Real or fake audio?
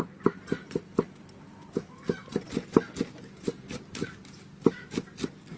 real